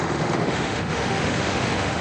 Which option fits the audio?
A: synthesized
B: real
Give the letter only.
A